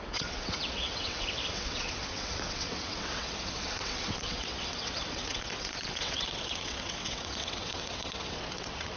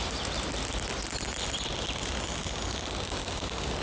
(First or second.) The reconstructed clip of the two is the first